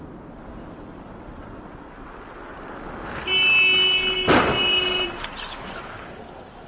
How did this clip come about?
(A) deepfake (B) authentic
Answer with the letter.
B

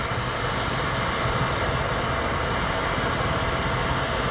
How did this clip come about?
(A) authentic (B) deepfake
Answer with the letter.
A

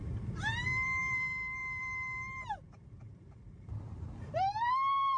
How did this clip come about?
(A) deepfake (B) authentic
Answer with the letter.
A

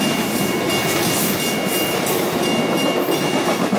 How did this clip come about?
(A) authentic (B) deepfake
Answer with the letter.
A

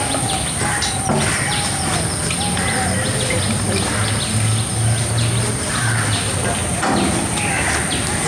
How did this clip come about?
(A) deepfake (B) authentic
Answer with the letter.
B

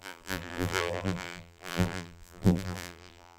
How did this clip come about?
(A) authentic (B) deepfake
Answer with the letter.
B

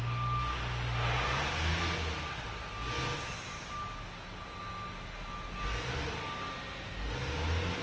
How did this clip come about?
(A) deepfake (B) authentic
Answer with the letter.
B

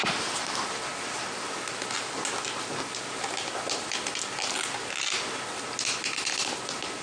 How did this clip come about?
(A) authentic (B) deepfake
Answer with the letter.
A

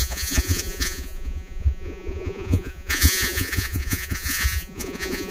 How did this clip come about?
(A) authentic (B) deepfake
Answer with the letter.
B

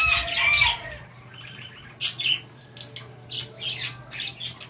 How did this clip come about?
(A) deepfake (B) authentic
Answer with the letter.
B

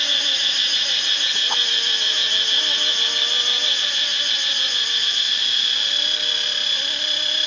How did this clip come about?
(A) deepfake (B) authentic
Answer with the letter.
B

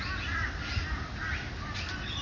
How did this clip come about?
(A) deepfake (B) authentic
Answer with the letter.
B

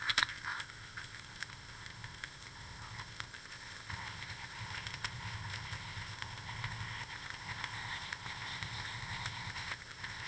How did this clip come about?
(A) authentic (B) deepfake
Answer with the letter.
B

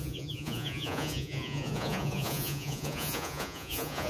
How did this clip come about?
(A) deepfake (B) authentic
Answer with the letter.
A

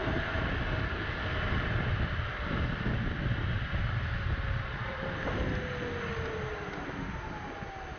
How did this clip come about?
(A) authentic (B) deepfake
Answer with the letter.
A